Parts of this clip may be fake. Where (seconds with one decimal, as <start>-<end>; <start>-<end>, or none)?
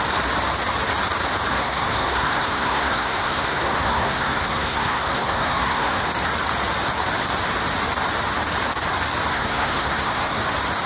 1.5-6.0; 9.3-10.4